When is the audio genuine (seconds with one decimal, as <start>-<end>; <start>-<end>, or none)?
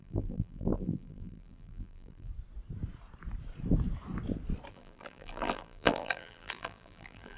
2.3-4.7